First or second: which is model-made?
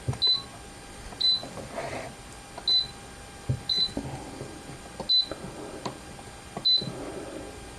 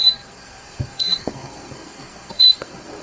second